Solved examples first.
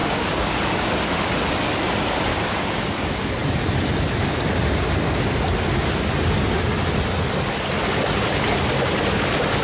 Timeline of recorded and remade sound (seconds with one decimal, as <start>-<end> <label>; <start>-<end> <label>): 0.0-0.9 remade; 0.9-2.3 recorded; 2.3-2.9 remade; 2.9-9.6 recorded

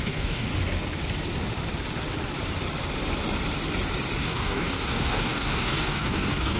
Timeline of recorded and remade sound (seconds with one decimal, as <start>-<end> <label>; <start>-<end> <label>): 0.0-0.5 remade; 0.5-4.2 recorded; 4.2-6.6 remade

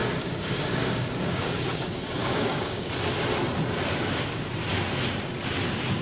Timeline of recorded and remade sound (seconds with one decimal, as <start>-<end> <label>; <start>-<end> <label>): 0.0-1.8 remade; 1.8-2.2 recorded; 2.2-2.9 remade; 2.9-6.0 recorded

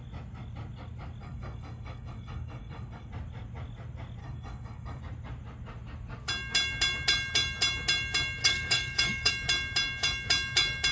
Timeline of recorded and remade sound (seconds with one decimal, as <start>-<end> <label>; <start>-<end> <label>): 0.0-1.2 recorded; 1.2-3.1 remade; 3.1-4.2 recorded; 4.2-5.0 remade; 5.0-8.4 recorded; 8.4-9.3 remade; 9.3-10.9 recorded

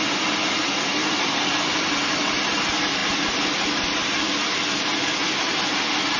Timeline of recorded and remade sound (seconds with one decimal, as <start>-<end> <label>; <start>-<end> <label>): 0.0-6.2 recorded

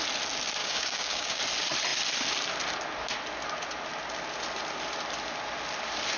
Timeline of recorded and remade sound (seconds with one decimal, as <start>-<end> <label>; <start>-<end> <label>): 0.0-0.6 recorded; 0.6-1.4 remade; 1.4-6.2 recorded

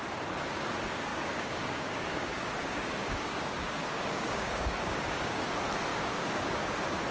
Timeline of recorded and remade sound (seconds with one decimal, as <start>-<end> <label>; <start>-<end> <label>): 0.0-1.1 recorded; 1.1-5.4 remade; 5.4-5.9 recorded; 5.9-6.6 remade; 6.6-7.1 recorded

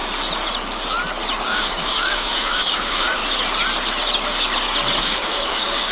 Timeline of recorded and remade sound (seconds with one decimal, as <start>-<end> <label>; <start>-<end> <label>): 0.0-1.4 recorded; 1.4-3.2 remade; 3.2-5.0 recorded; 5.0-5.9 remade